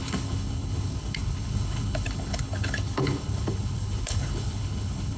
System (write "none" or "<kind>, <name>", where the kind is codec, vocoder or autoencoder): codec, HILCodec